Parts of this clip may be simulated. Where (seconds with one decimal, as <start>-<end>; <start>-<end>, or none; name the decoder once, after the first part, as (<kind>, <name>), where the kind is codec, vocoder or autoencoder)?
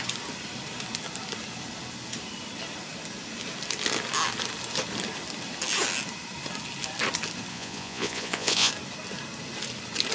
7.5-8.7 (vocoder, Vocos)